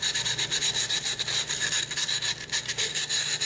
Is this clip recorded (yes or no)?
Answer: yes